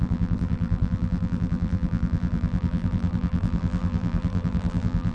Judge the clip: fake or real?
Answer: fake